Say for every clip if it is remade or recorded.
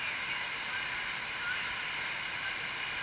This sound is recorded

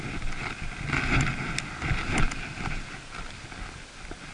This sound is recorded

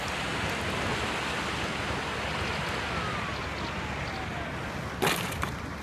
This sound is recorded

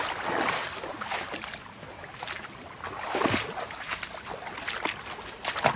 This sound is recorded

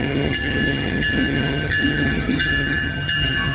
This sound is remade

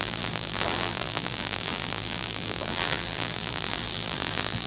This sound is remade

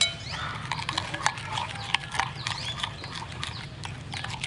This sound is recorded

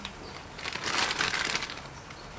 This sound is recorded